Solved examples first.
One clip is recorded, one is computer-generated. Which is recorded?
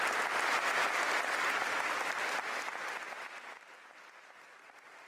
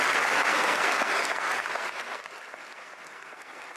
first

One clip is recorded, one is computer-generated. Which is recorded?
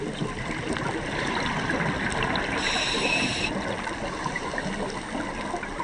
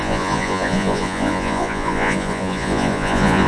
first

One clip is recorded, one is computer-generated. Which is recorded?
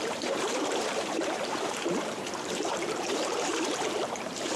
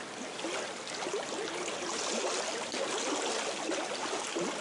second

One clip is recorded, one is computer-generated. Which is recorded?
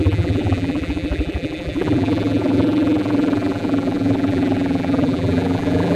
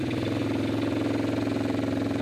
second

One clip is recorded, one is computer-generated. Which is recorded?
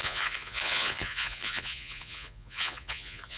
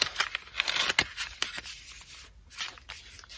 second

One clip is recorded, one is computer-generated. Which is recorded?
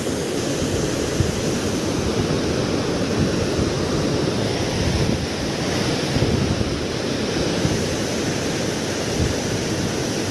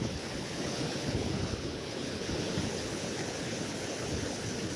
first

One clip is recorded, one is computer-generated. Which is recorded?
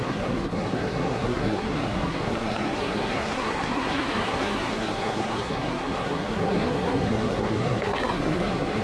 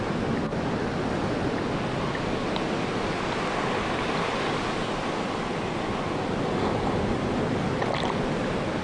second